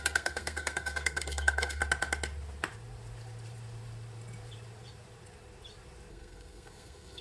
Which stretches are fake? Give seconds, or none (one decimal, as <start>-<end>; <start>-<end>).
0.0-1.8; 6.1-7.2